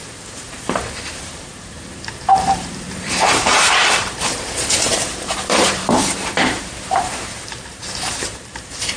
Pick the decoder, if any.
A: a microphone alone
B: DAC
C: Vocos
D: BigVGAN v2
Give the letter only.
D